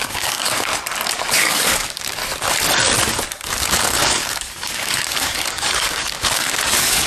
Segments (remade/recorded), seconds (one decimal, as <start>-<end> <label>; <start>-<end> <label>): 0.0-0.7 remade; 0.7-1.3 recorded; 1.3-2.2 remade; 2.2-3.3 recorded; 3.3-7.1 remade